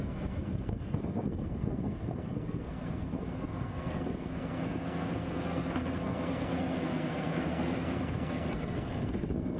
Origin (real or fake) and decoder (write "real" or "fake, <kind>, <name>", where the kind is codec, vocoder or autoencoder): fake, codec, SNAC